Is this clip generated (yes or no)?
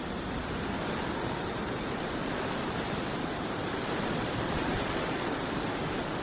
yes